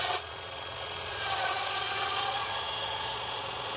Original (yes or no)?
no